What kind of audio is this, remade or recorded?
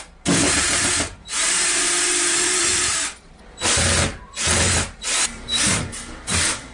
remade